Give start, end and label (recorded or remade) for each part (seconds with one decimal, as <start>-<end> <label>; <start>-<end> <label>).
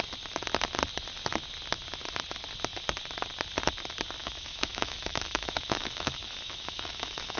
0.0-4.2 recorded; 4.2-7.4 remade